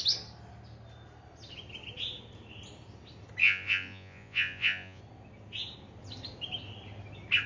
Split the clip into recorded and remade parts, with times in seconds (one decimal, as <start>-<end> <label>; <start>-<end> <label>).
0.0-3.4 recorded; 3.4-5.0 remade; 5.0-7.5 recorded

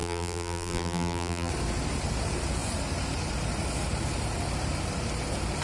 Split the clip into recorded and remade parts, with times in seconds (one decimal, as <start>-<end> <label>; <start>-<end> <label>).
0.0-1.5 remade; 1.5-5.6 recorded

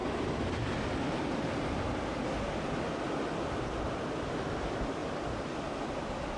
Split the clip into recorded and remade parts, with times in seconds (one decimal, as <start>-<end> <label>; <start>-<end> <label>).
0.0-6.4 recorded